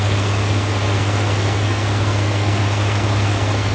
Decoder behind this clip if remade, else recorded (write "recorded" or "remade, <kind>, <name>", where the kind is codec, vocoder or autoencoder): remade, codec, SNAC